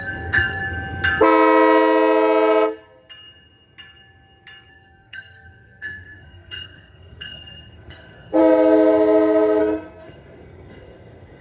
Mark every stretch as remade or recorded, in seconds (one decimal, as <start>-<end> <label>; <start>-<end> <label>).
0.0-0.6 remade; 0.6-4.7 recorded; 4.7-8.4 remade; 8.4-9.6 recorded; 9.6-11.4 remade